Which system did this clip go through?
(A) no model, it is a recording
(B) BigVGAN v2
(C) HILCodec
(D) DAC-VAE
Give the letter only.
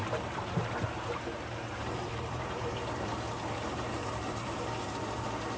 B